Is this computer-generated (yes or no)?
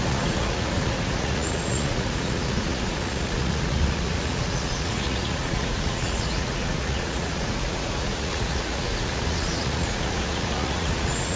yes